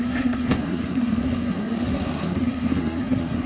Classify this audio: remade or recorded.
remade